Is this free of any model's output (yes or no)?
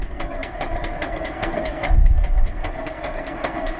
no